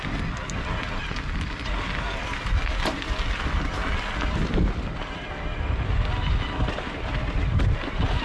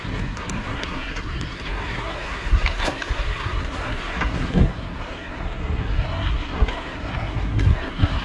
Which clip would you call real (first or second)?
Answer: first